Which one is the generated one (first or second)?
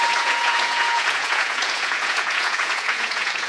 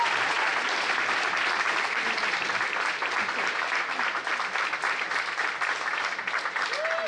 first